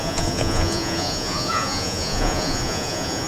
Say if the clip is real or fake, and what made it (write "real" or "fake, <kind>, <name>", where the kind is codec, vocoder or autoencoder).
fake, vocoder, Vocos